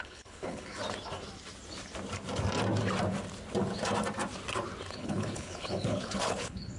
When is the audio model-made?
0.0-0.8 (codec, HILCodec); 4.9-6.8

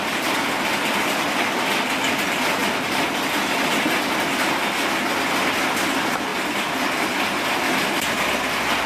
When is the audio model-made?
none

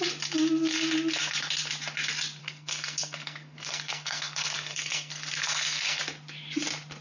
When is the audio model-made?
2.4-6.0 (codec, SNAC)

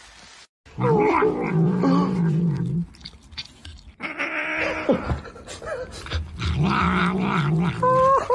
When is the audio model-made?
none

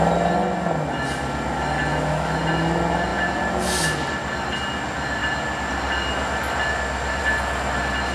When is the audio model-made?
1.9-2.4 (autoencoder, DAC-VAE)

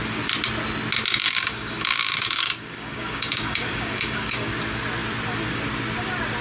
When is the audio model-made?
1.1-4.5 (codec, DAC)

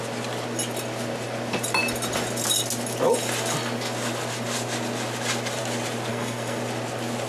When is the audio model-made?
6.1-6.6 (codec, SNAC)

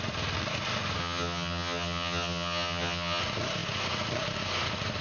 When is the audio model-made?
1.0-3.2 (vocoder, HiFi-GAN)